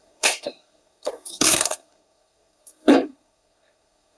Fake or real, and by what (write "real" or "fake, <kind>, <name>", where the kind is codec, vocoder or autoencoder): fake, codec, SNAC